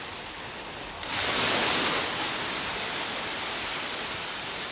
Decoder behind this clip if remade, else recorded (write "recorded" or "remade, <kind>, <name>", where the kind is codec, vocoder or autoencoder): recorded